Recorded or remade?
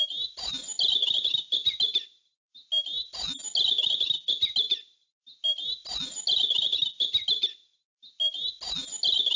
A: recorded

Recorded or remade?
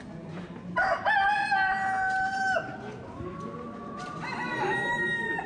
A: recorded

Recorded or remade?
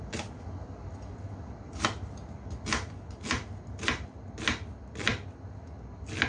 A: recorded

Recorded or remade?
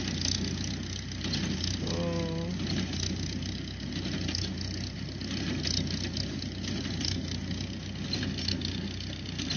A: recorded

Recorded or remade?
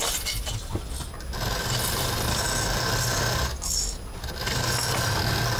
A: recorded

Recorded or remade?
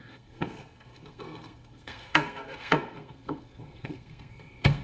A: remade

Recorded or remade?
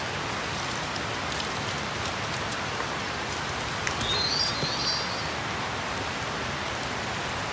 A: recorded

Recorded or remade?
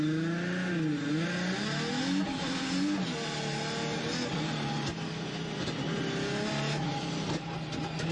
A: recorded